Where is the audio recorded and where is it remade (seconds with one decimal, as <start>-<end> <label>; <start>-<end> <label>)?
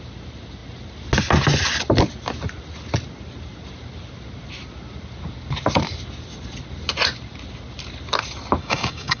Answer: 0.0-8.6 recorded; 8.6-9.2 remade